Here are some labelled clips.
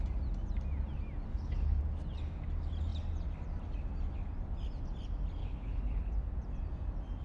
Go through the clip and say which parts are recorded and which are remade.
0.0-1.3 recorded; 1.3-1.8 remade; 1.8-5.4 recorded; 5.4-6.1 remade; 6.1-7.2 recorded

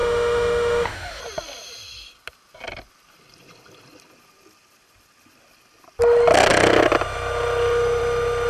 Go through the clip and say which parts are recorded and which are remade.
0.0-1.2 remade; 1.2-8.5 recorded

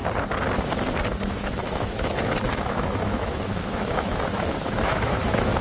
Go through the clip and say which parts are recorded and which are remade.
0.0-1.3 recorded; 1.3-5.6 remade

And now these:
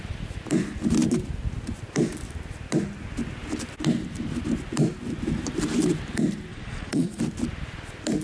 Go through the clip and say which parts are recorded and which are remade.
0.0-6.5 recorded; 6.5-7.2 remade; 7.2-8.2 recorded